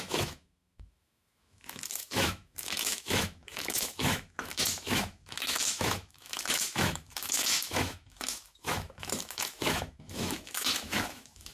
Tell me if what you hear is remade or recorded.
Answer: remade